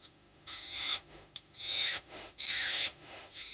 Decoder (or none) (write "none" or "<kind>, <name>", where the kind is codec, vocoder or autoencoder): autoencoder, DAC-VAE